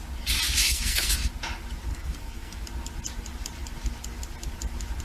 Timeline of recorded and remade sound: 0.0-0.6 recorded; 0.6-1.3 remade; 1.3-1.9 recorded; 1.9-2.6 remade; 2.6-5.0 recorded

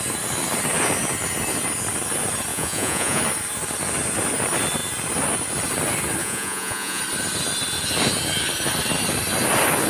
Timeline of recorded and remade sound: 0.0-2.5 recorded; 2.5-3.2 remade; 3.2-6.2 recorded; 6.2-7.0 remade; 7.0-9.9 recorded

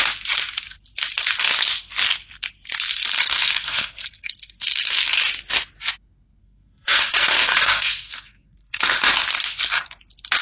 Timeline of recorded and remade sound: 0.0-2.9 recorded; 2.9-5.2 remade; 5.2-6.4 recorded; 6.4-9.0 remade; 9.0-10.4 recorded

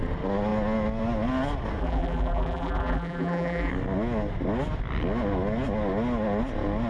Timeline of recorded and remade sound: 0.0-1.8 recorded; 1.8-3.7 remade; 3.7-6.9 recorded

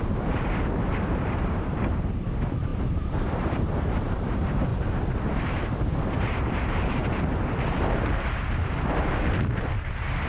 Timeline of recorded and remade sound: 0.0-4.7 remade; 4.7-5.3 recorded; 5.3-7.0 remade; 7.0-7.8 recorded; 7.8-10.3 remade

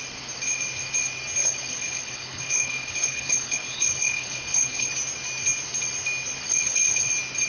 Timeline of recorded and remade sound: 0.0-1.4 recorded; 1.4-4.9 remade; 4.9-6.5 recorded; 6.5-7.1 remade; 7.1-7.5 recorded